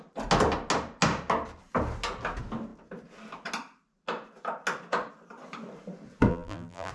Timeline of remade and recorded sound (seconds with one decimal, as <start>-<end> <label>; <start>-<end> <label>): 0.0-6.3 recorded; 6.3-6.9 remade